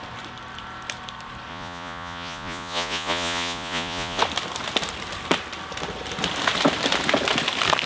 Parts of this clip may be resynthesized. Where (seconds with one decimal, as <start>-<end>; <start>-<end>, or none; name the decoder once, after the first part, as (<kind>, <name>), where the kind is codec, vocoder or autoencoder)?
1.5-4.2 (vocoder, Vocos)

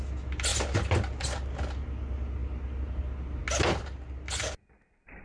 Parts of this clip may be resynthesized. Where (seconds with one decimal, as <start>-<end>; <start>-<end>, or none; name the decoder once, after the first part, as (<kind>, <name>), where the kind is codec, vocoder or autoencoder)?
none

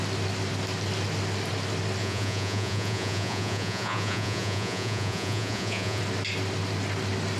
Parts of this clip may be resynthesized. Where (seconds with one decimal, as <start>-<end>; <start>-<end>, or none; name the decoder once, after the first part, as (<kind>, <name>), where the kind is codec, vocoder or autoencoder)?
2.0-6.0 (vocoder, Vocos)

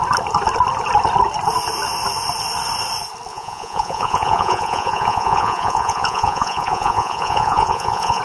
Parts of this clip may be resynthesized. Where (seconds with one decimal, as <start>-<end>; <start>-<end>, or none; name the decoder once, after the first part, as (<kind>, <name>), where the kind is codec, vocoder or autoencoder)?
3.3-8.2 (vocoder, Vocos)

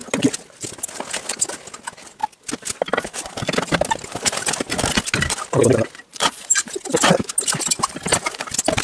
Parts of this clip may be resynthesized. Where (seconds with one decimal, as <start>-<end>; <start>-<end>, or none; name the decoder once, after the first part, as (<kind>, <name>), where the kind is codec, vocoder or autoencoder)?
6.1-6.7 (vocoder, Vocos)

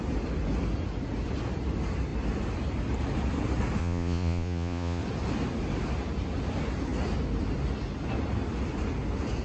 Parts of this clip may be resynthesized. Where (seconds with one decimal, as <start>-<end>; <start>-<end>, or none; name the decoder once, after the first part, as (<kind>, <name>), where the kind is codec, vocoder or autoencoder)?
3.8-5.0 (vocoder, Vocos)

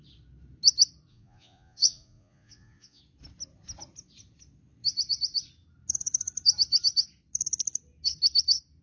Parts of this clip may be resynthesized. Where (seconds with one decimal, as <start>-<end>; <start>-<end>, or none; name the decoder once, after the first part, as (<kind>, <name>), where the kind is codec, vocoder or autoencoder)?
1.1-3.0 (vocoder, Vocos)

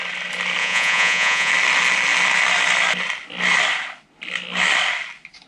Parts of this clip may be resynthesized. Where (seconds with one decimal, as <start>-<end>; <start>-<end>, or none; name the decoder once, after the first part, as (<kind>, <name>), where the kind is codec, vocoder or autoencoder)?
0.6-1.5 (vocoder, Vocos)